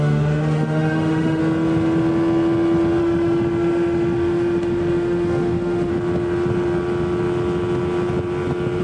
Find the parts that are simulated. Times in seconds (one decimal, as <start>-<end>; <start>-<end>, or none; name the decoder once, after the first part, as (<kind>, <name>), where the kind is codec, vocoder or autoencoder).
0.0-1.4 (autoencoder, DAC-VAE); 3.0-5.9